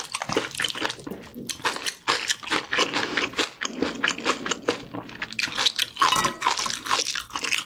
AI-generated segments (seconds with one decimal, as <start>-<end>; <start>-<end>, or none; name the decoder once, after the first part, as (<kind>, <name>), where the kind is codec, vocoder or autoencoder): none